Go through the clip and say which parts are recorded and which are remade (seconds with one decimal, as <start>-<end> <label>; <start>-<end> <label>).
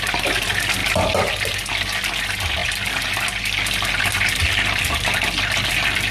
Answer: 0.0-6.1 recorded